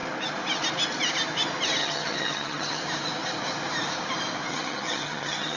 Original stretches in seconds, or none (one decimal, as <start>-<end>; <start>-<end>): 0.0-1.8; 2.8-4.5